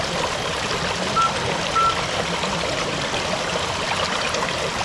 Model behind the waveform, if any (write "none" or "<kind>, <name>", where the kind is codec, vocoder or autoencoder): none